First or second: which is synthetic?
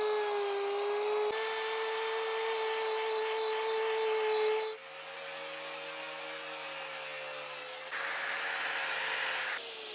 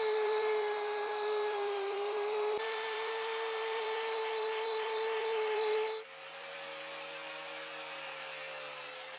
second